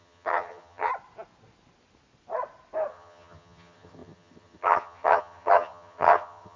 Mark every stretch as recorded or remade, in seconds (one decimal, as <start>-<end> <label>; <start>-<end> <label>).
0.0-0.9 remade; 0.9-2.9 recorded; 2.9-6.6 remade